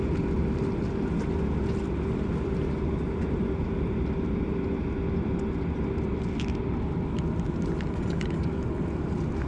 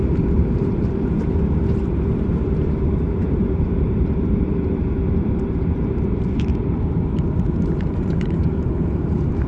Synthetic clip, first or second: second